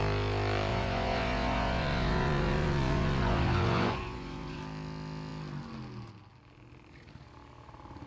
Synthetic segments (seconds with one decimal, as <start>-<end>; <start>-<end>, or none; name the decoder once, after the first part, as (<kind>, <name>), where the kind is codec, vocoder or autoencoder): 0.7-4.6 (vocoder, Vocos)